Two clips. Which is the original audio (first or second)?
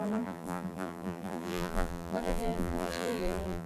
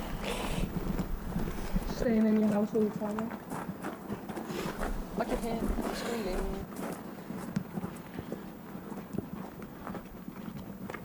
second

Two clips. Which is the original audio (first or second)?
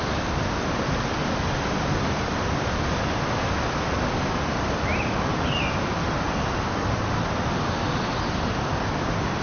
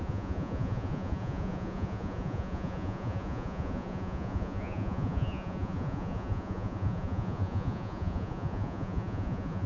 first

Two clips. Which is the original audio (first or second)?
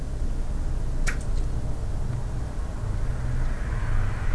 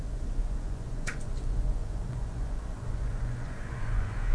first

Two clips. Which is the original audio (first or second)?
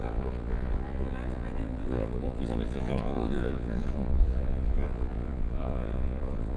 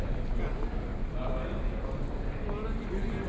second